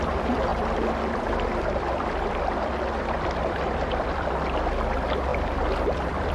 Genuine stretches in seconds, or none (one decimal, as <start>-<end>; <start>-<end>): 0.0-0.5; 4.3-5.3